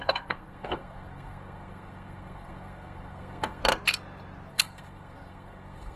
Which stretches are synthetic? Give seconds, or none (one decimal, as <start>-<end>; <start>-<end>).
0.0-3.6; 4.5-6.0